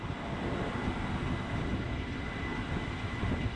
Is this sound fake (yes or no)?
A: no